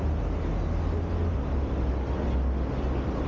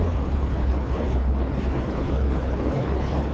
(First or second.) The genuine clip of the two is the first